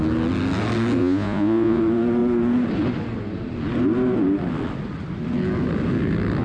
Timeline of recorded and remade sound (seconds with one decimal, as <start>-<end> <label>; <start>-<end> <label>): 0.0-1.0 recorded; 1.0-1.8 remade; 1.8-6.4 recorded